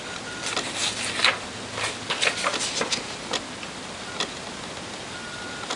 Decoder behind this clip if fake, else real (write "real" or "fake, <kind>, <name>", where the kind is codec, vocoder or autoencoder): real